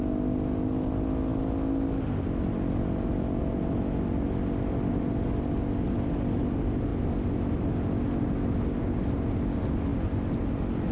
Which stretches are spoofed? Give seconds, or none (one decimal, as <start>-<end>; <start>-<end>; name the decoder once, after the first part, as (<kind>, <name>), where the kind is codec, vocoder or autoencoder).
none